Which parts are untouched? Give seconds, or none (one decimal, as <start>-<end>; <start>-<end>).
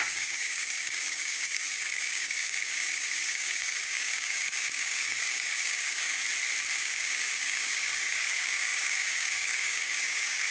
6.2-6.8